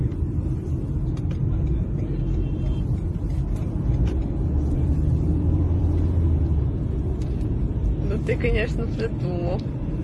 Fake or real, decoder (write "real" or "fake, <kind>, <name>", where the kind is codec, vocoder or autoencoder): fake, vocoder, BigVGAN v2